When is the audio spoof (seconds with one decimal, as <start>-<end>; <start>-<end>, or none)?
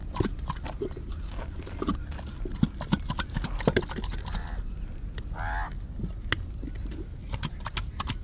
none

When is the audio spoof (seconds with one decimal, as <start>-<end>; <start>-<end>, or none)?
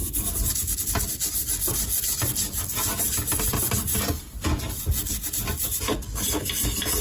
none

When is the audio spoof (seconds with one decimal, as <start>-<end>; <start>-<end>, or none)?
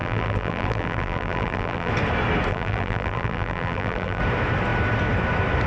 0.0-1.9; 2.5-4.2